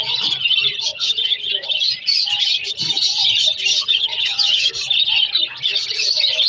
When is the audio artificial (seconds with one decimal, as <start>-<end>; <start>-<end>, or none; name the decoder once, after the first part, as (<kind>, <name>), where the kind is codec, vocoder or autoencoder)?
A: 0.9-1.5 (vocoder, HiFi-GAN); 3.7-4.7